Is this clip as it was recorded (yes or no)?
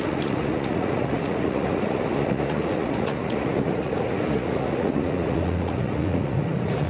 no